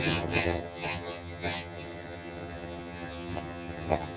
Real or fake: fake